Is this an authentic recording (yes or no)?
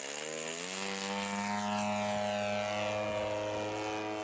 yes